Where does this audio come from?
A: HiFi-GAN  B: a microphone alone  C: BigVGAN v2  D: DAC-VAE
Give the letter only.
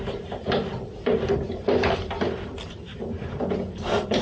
C